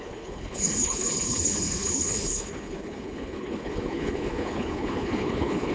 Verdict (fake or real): fake